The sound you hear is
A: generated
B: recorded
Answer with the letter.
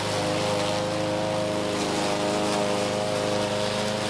B